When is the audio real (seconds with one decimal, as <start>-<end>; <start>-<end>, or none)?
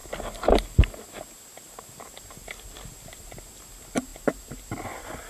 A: 0.0-5.3